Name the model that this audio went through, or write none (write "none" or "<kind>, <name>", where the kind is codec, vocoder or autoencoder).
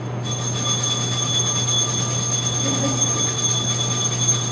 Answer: none